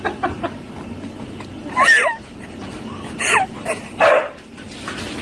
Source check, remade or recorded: recorded